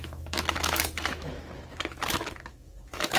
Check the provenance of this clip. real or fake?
fake